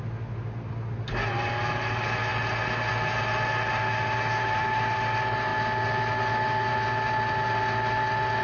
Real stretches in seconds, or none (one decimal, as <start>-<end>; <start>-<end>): 0.0-8.4